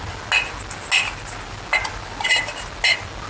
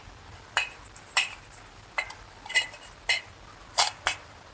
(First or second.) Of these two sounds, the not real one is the second